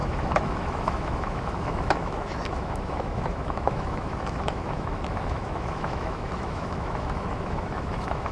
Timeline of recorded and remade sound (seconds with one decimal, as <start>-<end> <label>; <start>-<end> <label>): 0.0-8.3 remade

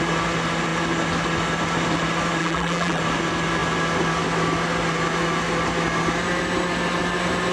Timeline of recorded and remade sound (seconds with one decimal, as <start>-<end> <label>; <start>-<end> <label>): 0.0-2.4 recorded; 2.4-3.0 remade; 3.0-7.5 recorded

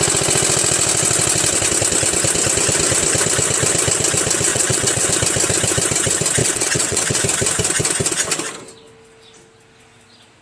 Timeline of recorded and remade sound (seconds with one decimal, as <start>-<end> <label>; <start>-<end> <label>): 0.0-4.5 recorded; 4.5-5.1 remade; 5.1-6.4 recorded; 6.4-7.2 remade; 7.2-10.4 recorded

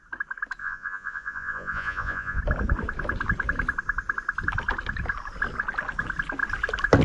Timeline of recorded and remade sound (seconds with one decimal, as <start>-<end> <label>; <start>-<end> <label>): 0.0-0.6 recorded; 0.6-2.4 remade; 2.4-7.0 recorded

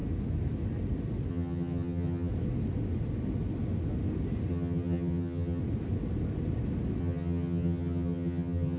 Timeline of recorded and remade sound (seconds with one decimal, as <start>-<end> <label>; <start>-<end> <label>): 0.0-1.3 recorded; 1.3-2.3 remade; 2.3-4.5 recorded; 4.5-5.6 remade; 5.6-7.0 recorded; 7.0-8.8 remade

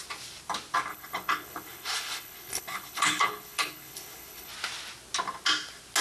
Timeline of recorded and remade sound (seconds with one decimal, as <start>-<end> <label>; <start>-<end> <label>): 0.0-0.9 recorded; 0.9-4.5 remade; 4.5-6.0 recorded